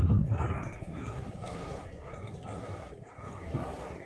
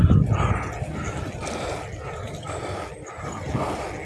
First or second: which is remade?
first